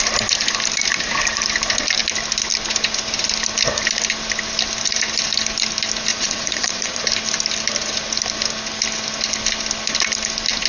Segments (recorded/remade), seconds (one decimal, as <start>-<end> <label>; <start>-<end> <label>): 0.0-6.1 recorded; 6.1-7.0 remade; 7.0-10.7 recorded